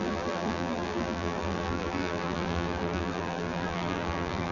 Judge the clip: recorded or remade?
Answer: remade